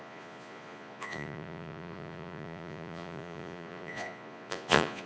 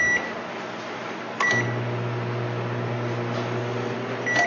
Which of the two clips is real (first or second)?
second